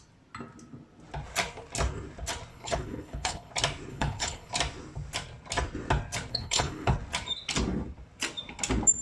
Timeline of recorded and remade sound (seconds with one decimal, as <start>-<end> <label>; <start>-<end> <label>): 0.0-2.5 recorded; 2.5-3.5 remade; 3.5-3.9 recorded; 3.9-4.5 remade; 4.5-6.3 recorded; 6.3-6.9 remade; 6.9-9.0 recorded